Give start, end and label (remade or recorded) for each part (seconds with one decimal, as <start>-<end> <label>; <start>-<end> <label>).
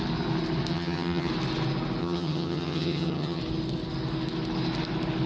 0.0-0.7 recorded; 0.7-1.3 remade; 1.3-2.0 recorded; 2.0-3.4 remade; 3.4-5.3 recorded